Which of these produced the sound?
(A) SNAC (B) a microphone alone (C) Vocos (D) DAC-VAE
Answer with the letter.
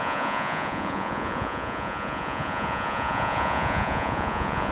C